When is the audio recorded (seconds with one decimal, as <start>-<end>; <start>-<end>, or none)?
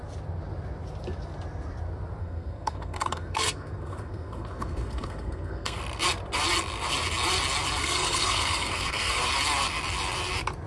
0.0-2.2; 5.8-7.8; 9.2-10.7